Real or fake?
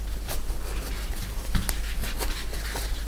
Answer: real